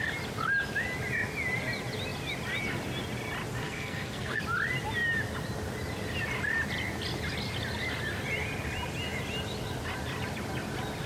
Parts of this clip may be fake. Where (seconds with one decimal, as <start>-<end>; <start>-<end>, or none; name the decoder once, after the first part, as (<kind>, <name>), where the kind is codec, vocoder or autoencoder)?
3.6-4.4 (codec, SNAC)